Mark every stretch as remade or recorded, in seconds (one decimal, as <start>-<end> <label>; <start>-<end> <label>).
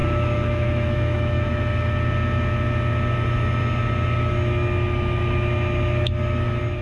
0.0-1.5 remade; 1.5-6.8 recorded